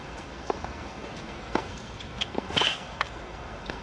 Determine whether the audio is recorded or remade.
remade